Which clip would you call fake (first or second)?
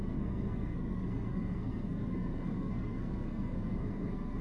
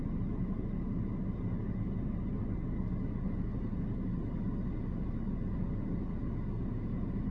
first